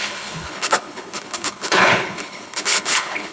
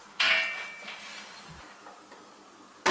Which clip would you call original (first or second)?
second